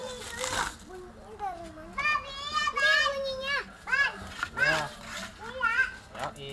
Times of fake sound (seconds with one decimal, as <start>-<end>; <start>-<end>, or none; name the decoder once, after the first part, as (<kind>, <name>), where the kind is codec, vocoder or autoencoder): none